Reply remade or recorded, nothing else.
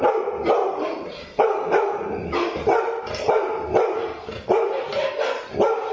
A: recorded